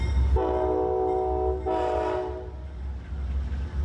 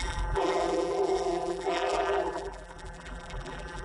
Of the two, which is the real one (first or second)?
first